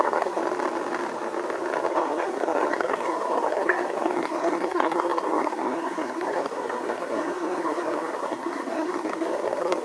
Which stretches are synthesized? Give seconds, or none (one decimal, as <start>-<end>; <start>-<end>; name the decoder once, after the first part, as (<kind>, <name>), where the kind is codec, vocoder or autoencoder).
0.0-0.4 (codec, SNAC); 1.9-9.8